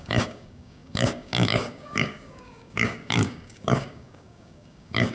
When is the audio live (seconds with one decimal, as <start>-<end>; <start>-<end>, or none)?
none